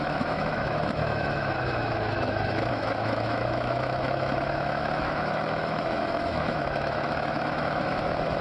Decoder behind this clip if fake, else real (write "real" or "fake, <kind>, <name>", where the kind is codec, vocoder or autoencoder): fake, autoencoder, DAC-VAE